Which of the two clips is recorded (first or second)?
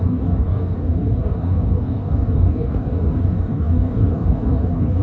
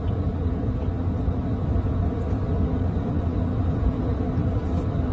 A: second